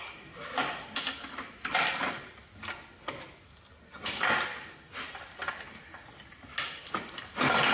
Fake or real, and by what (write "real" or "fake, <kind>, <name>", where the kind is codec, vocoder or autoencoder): real